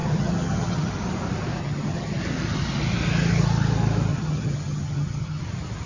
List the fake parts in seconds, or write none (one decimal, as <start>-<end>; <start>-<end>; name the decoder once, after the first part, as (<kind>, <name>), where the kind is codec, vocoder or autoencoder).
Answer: 0.0-0.9 (vocoder, HiFi-GAN); 1.6-2.2; 4.1-5.4